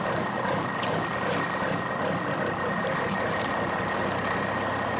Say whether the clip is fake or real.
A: real